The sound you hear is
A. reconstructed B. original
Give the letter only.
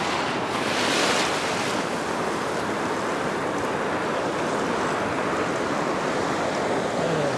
B